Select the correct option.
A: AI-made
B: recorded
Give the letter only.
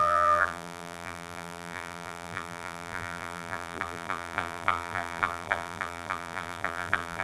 A